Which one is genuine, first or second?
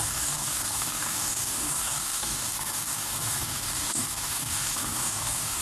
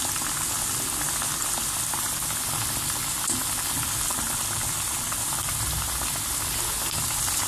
second